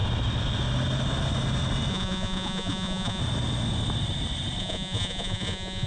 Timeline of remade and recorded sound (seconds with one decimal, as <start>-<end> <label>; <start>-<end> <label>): 0.0-1.9 recorded; 1.9-3.2 remade; 3.2-4.6 recorded; 4.6-5.9 remade